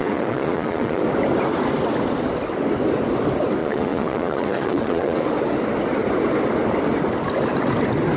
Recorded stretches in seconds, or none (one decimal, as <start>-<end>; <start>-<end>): 1.0-3.6; 5.3-8.2